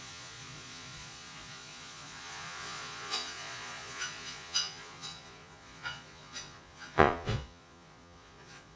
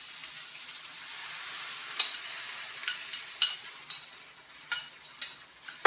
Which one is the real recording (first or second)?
second